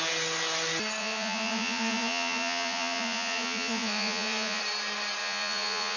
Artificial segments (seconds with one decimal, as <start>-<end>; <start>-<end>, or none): 1.0-4.6; 5.2-6.0